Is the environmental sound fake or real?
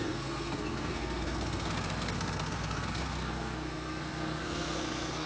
fake